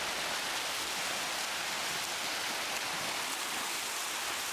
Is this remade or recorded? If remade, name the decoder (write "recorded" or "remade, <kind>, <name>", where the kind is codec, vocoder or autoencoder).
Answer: recorded